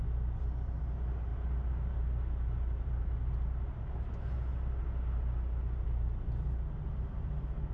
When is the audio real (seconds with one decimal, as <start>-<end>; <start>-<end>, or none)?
0.0-7.7